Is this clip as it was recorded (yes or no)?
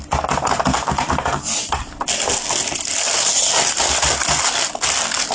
yes